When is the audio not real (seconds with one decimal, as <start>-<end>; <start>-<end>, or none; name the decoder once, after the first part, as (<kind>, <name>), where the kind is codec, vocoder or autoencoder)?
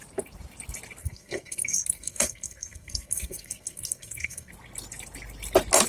1.0-4.5 (codec, SNAC)